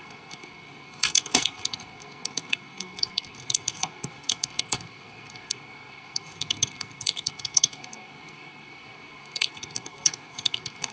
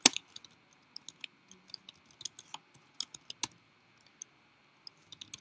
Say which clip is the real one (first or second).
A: second